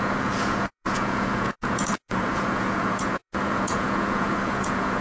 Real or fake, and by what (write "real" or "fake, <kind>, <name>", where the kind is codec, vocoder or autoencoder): fake, vocoder, Vocos